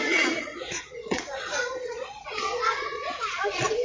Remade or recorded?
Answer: remade